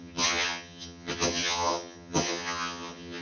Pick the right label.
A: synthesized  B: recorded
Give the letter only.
A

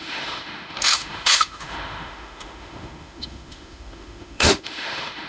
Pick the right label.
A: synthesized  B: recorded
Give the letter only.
A